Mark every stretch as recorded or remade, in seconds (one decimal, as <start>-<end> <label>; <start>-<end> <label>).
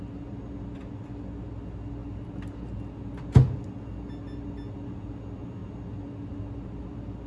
0.0-7.3 recorded